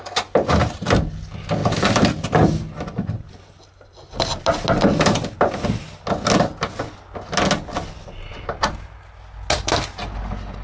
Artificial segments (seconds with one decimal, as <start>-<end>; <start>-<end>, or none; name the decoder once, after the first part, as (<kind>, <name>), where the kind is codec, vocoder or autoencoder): none